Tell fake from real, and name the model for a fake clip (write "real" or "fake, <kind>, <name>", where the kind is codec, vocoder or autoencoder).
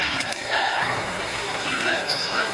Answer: fake, codec, SNAC